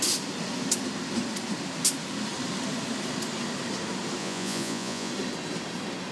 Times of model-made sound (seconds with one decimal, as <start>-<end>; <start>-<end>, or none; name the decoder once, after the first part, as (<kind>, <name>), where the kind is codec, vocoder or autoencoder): 4.2-5.1 (vocoder, Vocos)